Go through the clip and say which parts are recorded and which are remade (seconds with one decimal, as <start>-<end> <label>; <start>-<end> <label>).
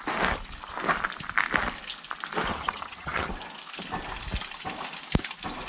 0.0-2.5 recorded; 2.5-3.3 remade; 3.3-5.7 recorded